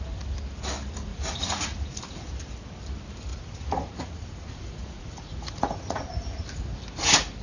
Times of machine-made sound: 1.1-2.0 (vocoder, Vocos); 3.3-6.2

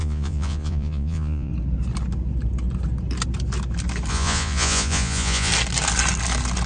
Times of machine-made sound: 0.0-1.5 (vocoder, Vocos); 4.1-5.5